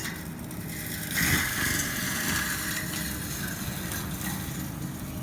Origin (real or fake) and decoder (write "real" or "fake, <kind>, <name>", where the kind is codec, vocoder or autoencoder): real